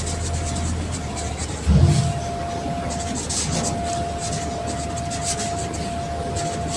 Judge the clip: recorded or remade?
recorded